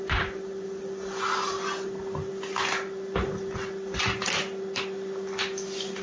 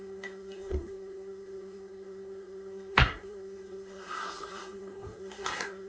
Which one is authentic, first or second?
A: first